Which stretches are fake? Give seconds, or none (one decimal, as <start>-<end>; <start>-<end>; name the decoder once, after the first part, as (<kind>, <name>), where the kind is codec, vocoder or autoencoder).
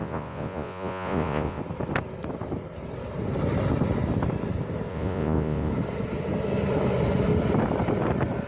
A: 0.0-1.6 (vocoder, Vocos); 4.9-5.7